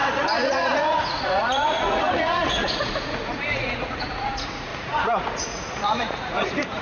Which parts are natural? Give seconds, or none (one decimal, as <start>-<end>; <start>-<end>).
none